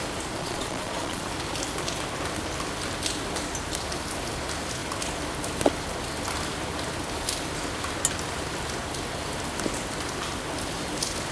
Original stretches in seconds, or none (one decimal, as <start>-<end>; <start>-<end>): 0.0-0.4; 1.2-11.3